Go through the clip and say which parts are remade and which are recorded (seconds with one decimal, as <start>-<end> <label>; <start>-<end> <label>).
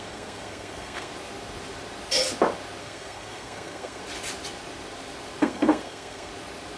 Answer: 0.0-1.1 remade; 1.1-2.8 recorded; 2.8-4.0 remade; 4.0-5.4 recorded; 5.4-6.3 remade; 6.3-6.8 recorded